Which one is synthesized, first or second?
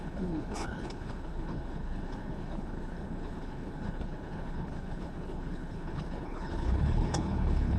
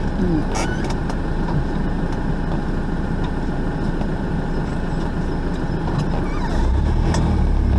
first